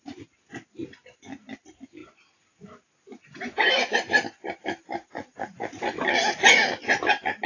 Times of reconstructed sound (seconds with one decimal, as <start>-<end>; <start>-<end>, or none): 5.0-6.0